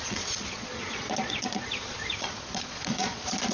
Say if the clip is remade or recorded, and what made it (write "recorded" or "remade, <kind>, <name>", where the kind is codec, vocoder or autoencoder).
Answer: remade, vocoder, Vocos